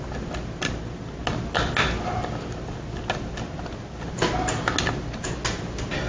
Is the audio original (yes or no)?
yes